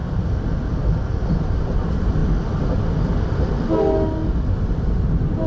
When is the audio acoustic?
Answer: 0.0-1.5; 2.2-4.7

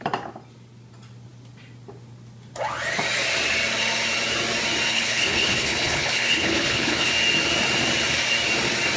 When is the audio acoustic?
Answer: 0.0-4.9; 7.1-9.0

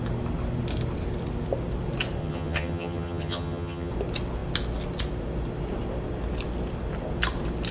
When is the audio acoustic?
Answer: 0.0-2.2; 3.9-7.7